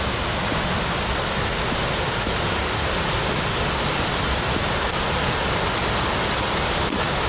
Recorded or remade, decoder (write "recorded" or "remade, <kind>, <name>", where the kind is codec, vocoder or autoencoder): recorded